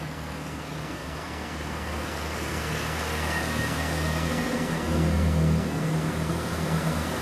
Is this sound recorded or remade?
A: remade